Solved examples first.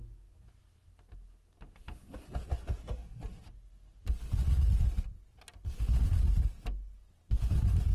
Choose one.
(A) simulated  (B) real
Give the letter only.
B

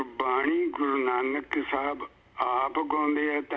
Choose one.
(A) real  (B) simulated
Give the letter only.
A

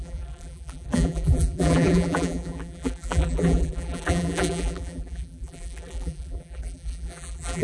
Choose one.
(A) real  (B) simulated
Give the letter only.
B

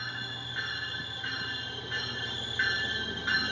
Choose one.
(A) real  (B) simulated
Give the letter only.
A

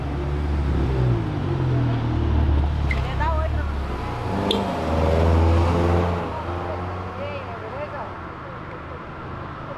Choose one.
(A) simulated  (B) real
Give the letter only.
B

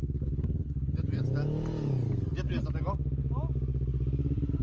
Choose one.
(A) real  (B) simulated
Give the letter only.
A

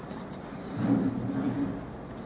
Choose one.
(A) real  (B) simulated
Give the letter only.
B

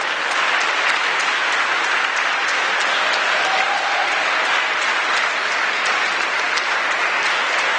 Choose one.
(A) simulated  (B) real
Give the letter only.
B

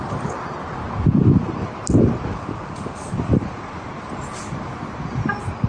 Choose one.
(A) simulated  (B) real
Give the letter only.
B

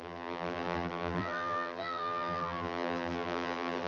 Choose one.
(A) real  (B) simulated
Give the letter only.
B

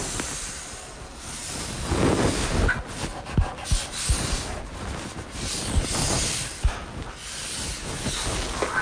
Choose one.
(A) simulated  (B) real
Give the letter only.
B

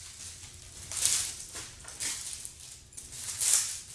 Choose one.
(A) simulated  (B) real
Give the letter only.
B